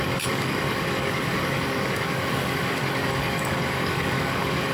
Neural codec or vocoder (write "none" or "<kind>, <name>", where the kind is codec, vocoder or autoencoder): codec, DAC